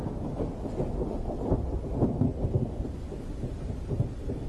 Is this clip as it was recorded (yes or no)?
yes